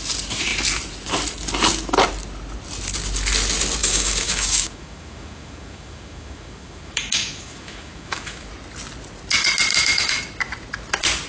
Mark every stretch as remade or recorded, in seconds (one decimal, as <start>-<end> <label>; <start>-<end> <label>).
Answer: 0.0-3.8 recorded; 3.8-8.5 remade; 8.5-9.7 recorded; 9.7-10.2 remade; 10.2-11.3 recorded